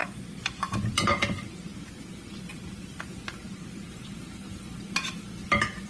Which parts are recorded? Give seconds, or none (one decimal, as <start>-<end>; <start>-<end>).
0.0-2.5; 3.4-4.0